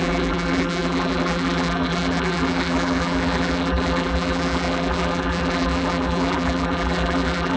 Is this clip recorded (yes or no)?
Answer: no